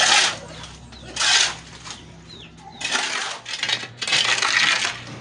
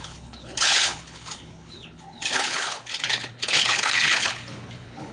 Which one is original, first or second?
first